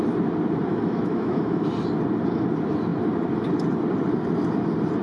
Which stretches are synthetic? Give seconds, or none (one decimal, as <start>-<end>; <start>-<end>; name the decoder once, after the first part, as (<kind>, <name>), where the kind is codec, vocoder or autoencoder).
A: 0.7-1.7 (autoencoder, DAC-VAE)